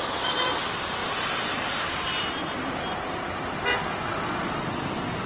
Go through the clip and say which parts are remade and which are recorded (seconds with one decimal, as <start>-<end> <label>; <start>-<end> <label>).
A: 0.0-5.3 recorded